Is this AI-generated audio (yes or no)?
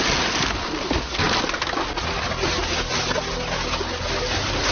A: no